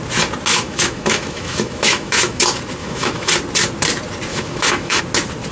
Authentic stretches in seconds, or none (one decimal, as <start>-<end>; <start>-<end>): 0.0-0.5; 2.4-2.8; 3.3-4.3; 5.0-5.5

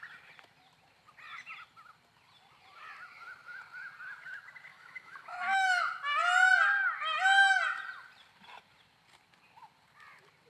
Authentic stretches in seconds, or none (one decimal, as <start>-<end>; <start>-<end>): 0.0-4.7; 5.8-10.5

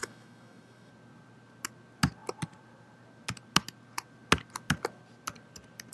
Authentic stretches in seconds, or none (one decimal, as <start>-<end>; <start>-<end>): 0.9-5.9